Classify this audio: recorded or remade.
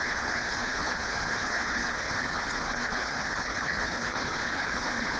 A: remade